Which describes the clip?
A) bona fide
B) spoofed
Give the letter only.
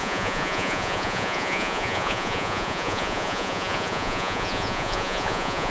B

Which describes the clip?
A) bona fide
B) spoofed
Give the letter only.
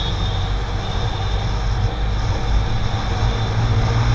A